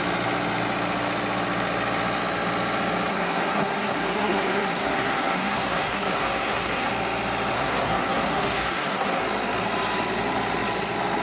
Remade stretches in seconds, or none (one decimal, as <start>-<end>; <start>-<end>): 3.1-6.9; 7.5-9.2